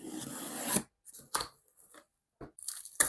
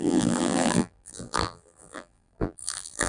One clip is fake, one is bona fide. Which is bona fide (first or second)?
first